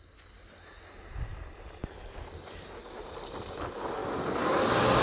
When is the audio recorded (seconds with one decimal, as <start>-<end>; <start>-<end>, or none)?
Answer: 0.0-5.0